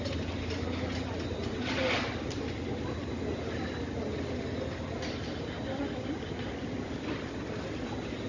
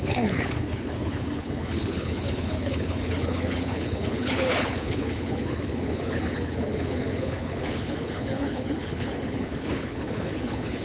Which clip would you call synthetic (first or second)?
second